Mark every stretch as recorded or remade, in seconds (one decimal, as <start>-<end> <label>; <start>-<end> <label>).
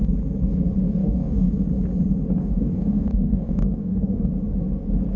0.0-1.0 recorded; 1.0-1.5 remade; 1.5-2.4 recorded; 2.4-4.3 remade; 4.3-5.2 recorded